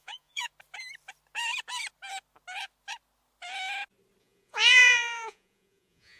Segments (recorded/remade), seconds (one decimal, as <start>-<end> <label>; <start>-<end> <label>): 0.0-0.5 remade; 0.5-4.2 recorded; 4.2-6.2 remade